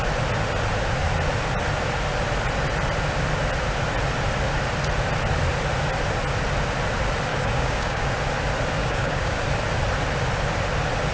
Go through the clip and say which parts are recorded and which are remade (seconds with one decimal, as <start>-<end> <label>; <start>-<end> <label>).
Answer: 0.0-7.3 recorded; 7.3-8.1 remade; 8.1-8.8 recorded; 8.8-9.4 remade; 9.4-11.1 recorded